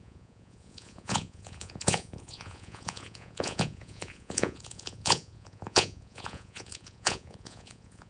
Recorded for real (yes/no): no